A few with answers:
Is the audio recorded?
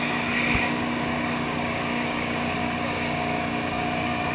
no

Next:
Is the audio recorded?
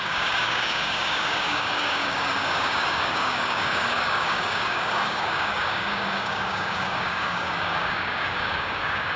no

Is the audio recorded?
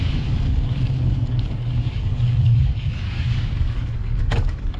no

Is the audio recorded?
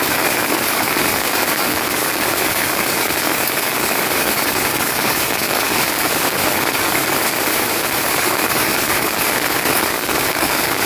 no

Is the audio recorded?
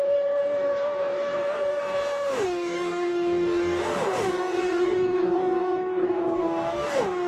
no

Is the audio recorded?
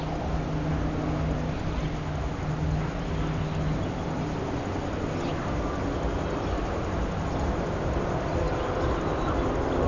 yes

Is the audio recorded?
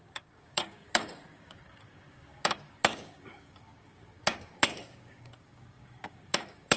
no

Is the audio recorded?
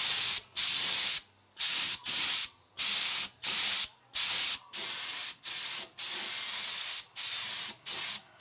yes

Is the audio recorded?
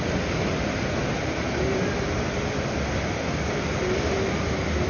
yes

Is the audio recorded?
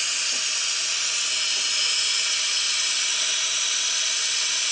yes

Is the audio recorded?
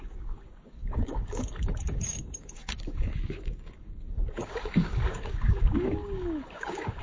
no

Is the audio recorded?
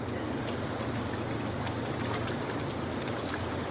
yes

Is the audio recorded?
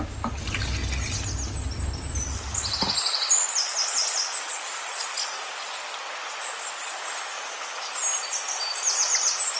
yes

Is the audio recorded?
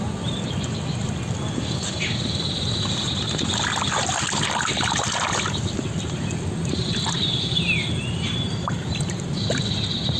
yes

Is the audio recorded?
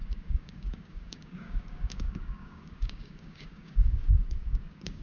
no